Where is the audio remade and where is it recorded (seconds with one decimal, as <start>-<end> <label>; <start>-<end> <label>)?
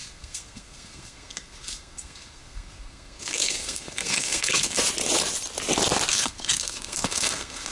0.0-4.8 remade; 4.8-6.1 recorded; 6.1-7.7 remade